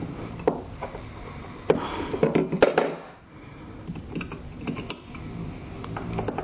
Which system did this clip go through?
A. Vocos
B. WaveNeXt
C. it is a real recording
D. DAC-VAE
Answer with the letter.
C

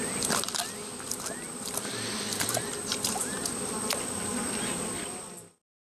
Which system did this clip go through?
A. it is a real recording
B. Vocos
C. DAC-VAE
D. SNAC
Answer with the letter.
A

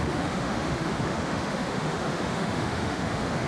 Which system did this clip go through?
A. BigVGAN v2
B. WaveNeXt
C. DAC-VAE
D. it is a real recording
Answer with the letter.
C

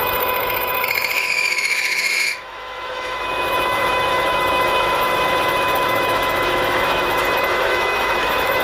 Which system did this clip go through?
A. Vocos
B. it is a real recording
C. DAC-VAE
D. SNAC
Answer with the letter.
C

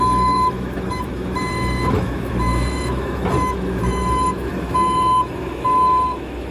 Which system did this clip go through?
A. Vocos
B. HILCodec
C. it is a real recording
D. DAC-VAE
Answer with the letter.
D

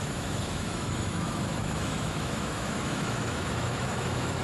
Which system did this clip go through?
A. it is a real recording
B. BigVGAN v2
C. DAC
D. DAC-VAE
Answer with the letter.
D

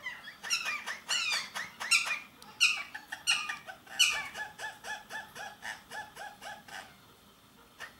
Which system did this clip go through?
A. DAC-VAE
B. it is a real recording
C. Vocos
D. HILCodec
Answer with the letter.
B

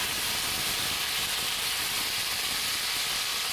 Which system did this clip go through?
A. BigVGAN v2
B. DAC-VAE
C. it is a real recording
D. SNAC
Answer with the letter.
C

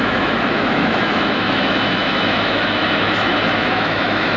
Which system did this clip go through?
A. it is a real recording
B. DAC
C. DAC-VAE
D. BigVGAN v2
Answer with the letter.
C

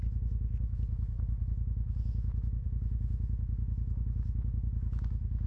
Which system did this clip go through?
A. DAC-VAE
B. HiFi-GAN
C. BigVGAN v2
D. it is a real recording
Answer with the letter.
A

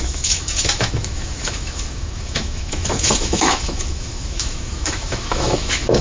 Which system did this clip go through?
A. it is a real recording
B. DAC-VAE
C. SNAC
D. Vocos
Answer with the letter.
B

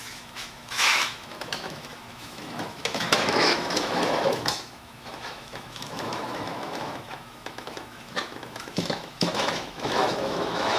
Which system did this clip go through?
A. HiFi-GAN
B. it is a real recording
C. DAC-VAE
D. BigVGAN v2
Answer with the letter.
C